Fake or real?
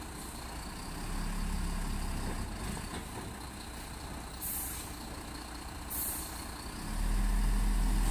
real